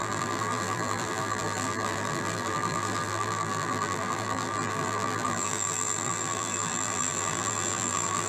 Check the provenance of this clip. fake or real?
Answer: fake